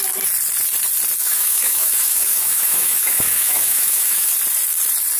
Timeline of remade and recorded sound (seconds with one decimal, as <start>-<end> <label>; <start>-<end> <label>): 0.0-1.2 recorded; 1.2-4.3 remade; 4.3-5.2 recorded